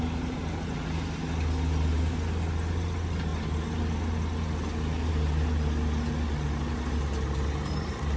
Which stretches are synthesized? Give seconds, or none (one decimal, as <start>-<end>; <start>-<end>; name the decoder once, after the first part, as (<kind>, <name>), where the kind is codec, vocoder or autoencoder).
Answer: none